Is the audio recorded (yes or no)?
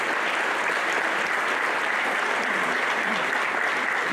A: yes